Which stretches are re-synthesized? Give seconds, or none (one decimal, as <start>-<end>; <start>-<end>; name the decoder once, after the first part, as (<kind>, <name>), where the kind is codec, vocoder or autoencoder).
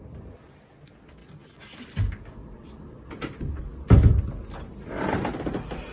none